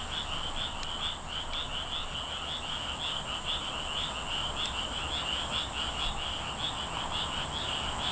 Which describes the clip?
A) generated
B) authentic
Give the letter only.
B